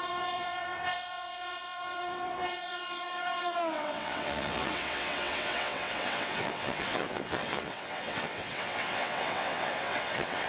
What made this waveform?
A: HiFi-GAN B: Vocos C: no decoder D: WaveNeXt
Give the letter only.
D